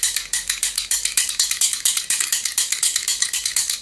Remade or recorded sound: remade